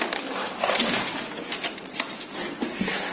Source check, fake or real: real